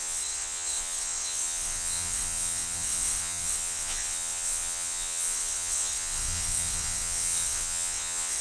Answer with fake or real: fake